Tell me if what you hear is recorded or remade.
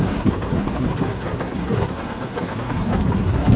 remade